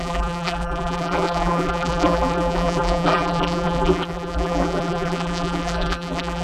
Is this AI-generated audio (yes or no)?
yes